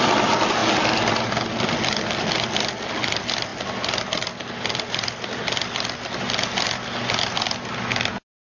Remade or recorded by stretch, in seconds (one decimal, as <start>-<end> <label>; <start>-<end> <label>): 0.0-8.6 recorded